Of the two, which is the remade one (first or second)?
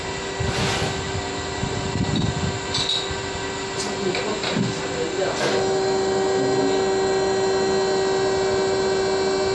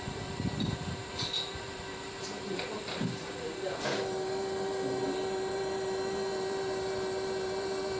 second